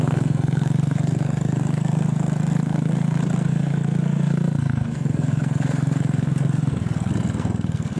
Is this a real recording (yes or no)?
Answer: no